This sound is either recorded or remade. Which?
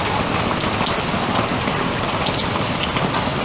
recorded